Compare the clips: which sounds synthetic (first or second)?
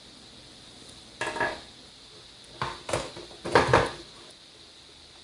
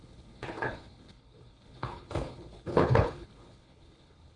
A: second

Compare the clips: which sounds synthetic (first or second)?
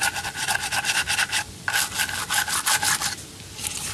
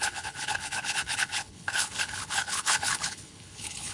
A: second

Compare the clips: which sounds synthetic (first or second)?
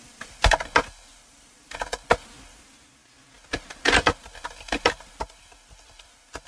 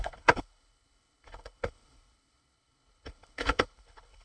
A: second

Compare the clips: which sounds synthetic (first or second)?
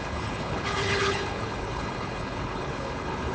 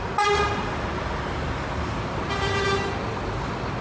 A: first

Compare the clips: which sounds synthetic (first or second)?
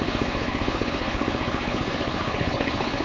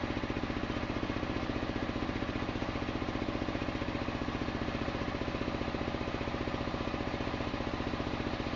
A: first